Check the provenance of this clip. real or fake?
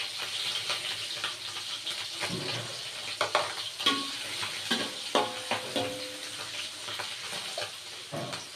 real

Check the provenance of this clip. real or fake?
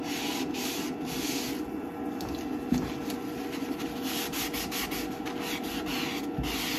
real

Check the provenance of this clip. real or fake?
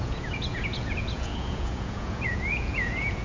fake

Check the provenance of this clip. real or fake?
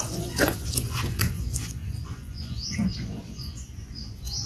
fake